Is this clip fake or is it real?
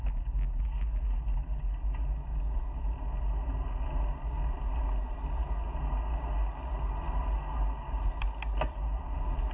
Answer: real